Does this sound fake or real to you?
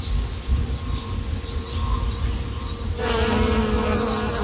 real